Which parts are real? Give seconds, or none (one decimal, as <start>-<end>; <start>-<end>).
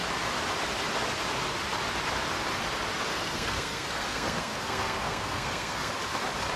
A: 0.0-3.1; 5.9-6.6